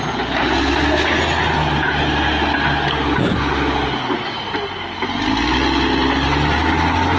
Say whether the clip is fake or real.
real